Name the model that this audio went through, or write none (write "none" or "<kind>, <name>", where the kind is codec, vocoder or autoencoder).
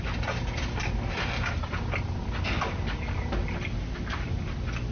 none